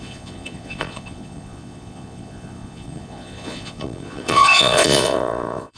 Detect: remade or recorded remade